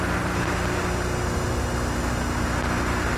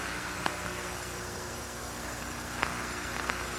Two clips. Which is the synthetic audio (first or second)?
second